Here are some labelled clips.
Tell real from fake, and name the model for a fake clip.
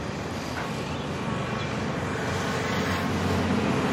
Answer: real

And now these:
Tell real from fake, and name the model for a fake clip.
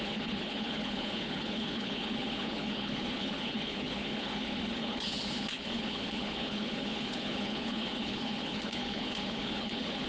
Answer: fake, codec, HILCodec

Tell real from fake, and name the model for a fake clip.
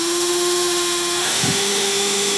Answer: fake, autoencoder, DAC-VAE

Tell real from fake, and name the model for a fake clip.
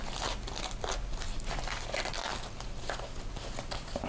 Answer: real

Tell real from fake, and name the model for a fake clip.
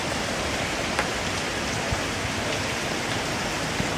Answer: real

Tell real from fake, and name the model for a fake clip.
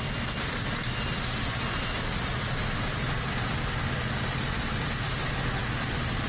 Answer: real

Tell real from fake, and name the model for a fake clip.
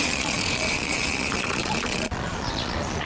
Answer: fake, vocoder, Vocos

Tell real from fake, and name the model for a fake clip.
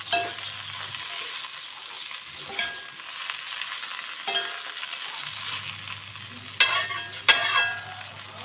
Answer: real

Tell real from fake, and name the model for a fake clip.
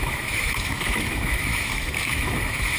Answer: fake, autoencoder, DAC-VAE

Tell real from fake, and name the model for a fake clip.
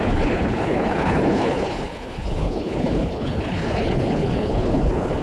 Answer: fake, codec, HILCodec